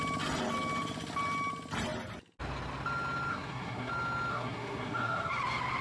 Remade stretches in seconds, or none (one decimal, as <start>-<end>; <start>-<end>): 3.3-3.9; 4.3-5.3